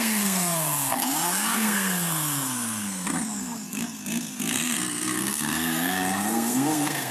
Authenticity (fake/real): fake